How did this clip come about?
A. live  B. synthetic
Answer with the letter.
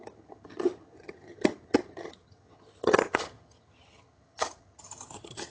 B